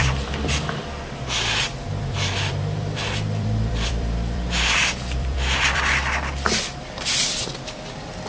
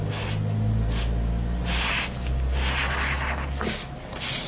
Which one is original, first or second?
second